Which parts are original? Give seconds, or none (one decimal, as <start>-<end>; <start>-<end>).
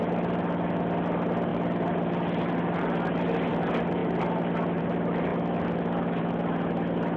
0.0-7.2